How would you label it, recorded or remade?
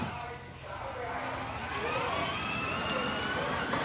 recorded